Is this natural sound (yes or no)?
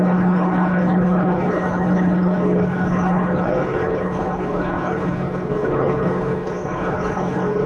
no